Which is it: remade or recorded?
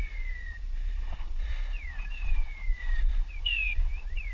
remade